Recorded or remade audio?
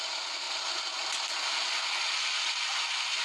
recorded